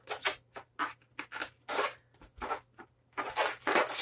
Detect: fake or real real